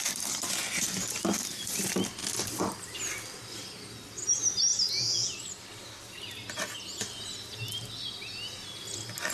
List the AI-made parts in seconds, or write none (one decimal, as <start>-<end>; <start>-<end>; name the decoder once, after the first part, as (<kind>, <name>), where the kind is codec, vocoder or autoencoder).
none